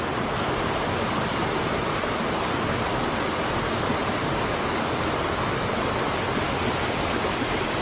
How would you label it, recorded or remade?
recorded